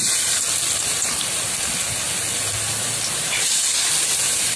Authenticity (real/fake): real